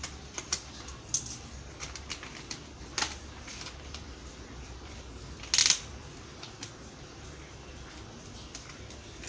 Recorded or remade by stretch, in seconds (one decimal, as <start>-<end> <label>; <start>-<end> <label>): 0.0-9.3 recorded